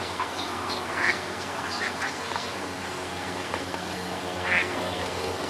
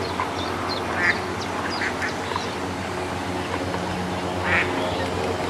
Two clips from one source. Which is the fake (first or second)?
first